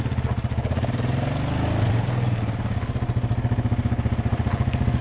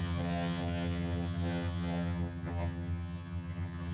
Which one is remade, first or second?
second